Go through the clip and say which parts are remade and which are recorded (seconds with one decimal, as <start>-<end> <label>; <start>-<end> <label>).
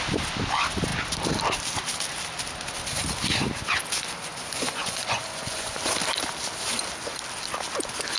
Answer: 0.0-4.3 recorded; 4.3-5.8 remade; 5.8-8.2 recorded